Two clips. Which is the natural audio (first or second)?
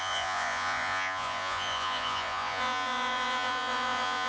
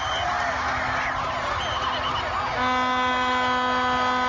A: second